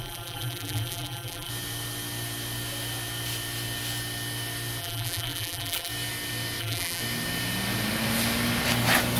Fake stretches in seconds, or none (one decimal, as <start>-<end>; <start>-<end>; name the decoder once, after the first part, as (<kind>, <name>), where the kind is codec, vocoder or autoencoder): 0.0-1.5 (vocoder, BigVGAN v2); 4.8-5.9; 6.6-7.0